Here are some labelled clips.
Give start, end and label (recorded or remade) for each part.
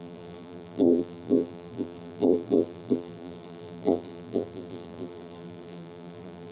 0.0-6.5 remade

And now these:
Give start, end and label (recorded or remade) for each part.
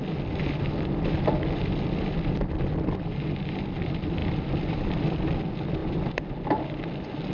0.0-7.3 recorded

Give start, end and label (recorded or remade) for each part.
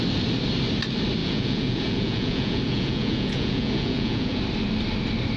0.0-1.2 recorded; 1.2-4.4 remade; 4.4-5.4 recorded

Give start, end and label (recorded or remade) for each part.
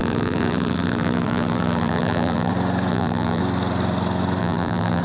0.0-2.5 remade; 2.5-2.9 recorded; 2.9-3.4 remade; 3.4-4.4 recorded; 4.4-5.0 remade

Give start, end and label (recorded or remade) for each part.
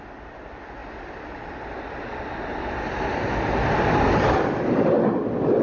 0.0-5.6 recorded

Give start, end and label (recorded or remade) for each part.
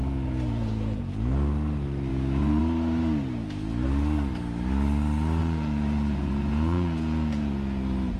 0.0-1.3 remade; 1.3-2.1 recorded; 2.1-2.6 remade; 2.6-5.4 recorded; 5.4-8.2 remade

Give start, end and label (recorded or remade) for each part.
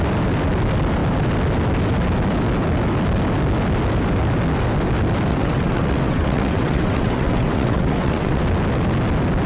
0.0-5.3 recorded; 5.3-8.4 remade; 8.4-9.5 recorded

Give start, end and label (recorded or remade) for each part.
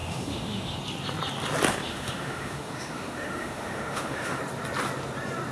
0.0-0.8 remade; 0.8-1.7 recorded; 1.7-4.4 remade; 4.4-5.5 recorded